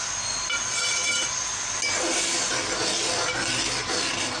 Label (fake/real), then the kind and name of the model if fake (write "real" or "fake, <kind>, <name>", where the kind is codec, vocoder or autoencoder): real